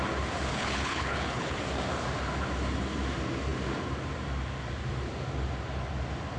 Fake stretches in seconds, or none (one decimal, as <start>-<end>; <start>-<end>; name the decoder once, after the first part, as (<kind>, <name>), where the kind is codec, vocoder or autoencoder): 0.5-1.6 (codec, HILCodec)